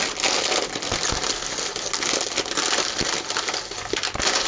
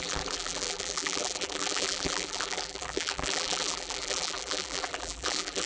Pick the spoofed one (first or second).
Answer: second